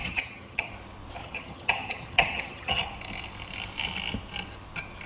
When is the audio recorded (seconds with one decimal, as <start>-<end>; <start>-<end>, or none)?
0.7-1.2; 2.8-5.1